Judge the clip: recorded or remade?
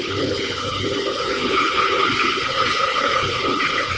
remade